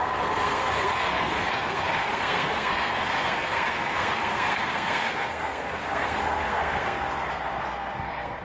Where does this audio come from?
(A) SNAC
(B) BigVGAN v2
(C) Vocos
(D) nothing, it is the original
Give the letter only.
A